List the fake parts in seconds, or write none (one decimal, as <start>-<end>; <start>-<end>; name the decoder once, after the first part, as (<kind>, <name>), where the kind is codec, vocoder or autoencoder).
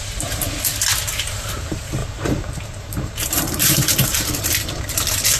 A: 2.0-4.3 (vocoder, BigVGAN v2)